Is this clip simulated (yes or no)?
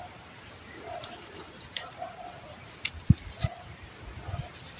no